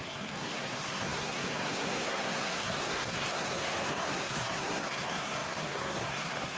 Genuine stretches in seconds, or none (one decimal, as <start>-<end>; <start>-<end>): none